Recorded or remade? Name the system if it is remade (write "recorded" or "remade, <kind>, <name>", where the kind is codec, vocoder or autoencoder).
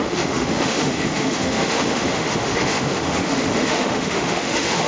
remade, autoencoder, DAC-VAE